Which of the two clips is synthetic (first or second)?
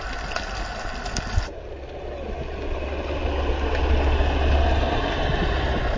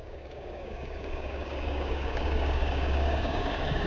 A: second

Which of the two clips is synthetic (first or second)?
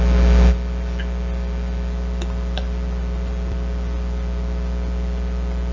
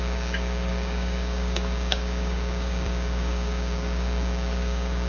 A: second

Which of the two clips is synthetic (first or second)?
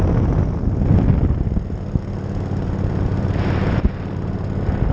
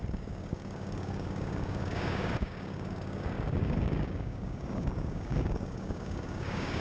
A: second